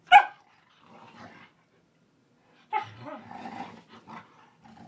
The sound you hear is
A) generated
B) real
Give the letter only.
B